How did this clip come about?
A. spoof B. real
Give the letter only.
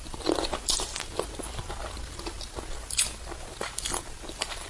B